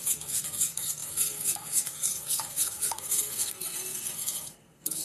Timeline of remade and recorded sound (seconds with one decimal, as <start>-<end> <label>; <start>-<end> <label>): 0.0-5.0 remade